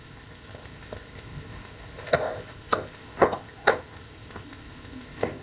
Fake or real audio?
fake